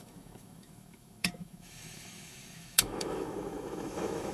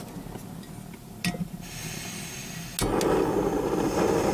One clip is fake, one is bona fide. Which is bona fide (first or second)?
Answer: second